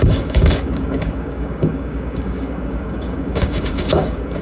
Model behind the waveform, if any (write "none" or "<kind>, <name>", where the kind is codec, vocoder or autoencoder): codec, DAC